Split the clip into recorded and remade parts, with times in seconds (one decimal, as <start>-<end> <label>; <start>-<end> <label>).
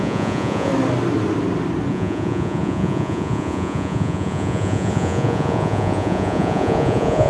0.0-0.7 remade; 0.7-1.9 recorded; 1.9-7.3 remade